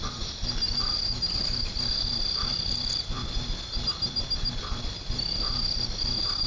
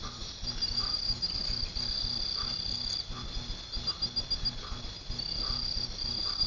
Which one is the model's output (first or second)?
first